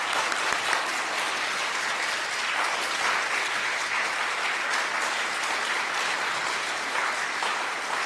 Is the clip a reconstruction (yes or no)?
no